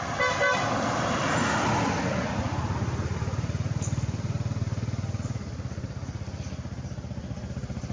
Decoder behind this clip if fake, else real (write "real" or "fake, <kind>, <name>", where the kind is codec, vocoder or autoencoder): real